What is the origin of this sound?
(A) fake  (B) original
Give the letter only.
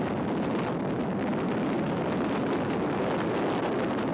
B